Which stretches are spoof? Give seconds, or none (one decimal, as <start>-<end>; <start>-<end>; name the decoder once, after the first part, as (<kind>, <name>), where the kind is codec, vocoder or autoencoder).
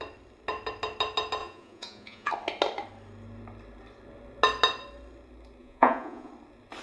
1.4-2.3 (vocoder, Vocos); 5.6-6.3